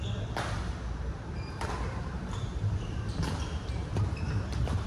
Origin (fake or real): fake